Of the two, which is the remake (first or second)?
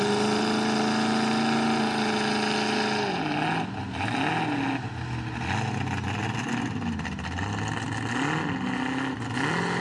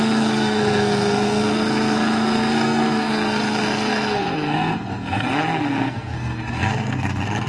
second